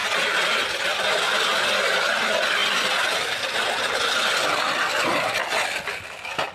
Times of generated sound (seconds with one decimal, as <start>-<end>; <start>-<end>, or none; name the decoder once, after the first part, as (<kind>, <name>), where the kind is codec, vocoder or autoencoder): none